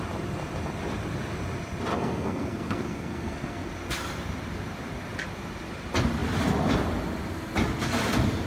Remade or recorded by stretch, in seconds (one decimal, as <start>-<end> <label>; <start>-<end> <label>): 0.0-1.9 recorded; 1.9-3.7 remade; 3.7-8.5 recorded

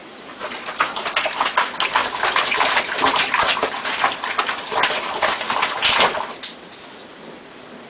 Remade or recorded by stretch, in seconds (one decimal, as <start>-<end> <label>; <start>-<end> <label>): 0.0-1.5 remade; 1.5-2.0 recorded; 2.0-3.2 remade; 3.2-7.9 recorded

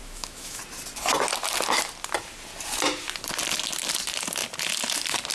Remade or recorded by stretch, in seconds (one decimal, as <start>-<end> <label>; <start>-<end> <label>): 0.0-0.6 remade; 0.6-5.3 recorded

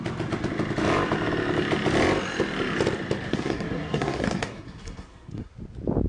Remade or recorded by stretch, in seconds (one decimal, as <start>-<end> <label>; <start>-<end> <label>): 0.0-3.3 recorded; 3.3-5.5 remade; 5.5-6.1 recorded

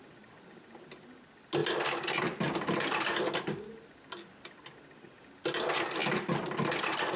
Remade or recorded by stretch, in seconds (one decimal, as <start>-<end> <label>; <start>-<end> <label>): 0.0-7.2 recorded

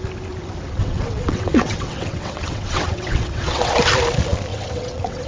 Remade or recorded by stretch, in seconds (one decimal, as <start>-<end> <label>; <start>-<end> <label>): 0.0-0.8 recorded; 0.8-3.7 remade; 3.7-4.5 recorded; 4.5-5.3 remade

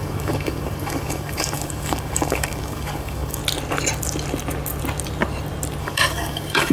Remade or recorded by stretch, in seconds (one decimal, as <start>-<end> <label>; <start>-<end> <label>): 0.0-3.4 remade; 3.4-5.8 recorded; 5.8-6.7 remade

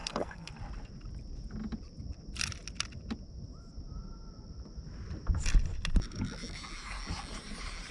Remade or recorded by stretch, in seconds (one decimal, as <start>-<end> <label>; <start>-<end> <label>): 0.0-0.5 remade; 0.5-7.9 recorded